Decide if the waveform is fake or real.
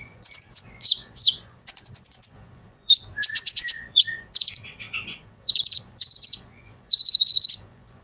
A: fake